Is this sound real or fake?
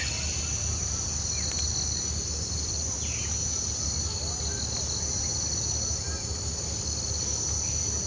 real